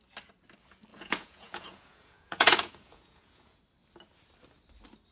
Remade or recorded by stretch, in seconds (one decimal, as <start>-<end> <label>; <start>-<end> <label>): 0.0-0.9 recorded; 0.9-3.6 remade; 3.6-5.1 recorded